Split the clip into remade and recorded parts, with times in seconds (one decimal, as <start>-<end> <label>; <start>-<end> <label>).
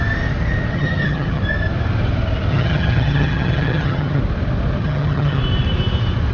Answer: 0.0-0.7 recorded; 0.7-1.4 remade; 1.4-2.5 recorded; 2.5-4.2 remade; 4.2-4.8 recorded; 4.8-5.4 remade; 5.4-6.3 recorded